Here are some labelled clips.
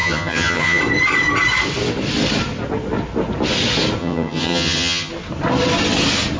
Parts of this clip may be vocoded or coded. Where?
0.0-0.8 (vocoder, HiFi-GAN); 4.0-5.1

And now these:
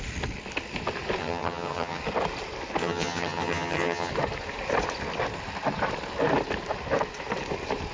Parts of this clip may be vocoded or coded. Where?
1.2-2.0 (vocoder, HiFi-GAN); 2.8-4.1